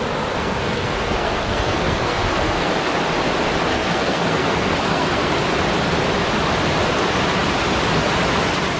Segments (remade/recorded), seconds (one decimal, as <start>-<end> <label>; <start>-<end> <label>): 0.0-0.4 recorded; 0.4-2.7 remade; 2.7-3.7 recorded; 3.7-5.3 remade; 5.3-8.8 recorded